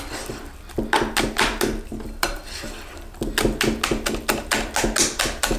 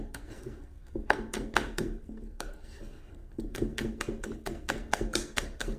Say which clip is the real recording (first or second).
first